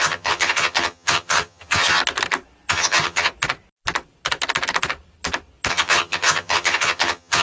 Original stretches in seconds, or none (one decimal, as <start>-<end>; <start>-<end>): 2.0-2.7; 3.3-5.7